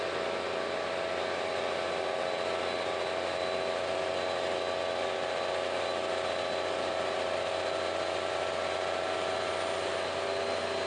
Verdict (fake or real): real